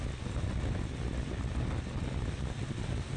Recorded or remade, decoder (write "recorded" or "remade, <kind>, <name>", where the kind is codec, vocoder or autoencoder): recorded